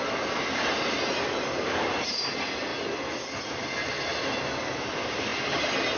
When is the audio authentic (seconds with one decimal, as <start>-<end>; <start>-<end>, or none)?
0.0-6.0